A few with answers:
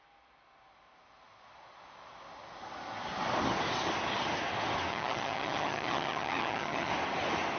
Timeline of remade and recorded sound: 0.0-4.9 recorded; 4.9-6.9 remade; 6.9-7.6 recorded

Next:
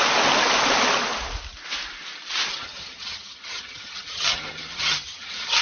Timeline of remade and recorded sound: 0.0-2.5 recorded; 2.5-5.6 remade